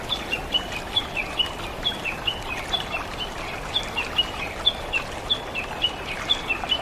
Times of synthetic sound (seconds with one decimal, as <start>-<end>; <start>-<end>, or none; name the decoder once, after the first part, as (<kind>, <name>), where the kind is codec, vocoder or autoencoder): none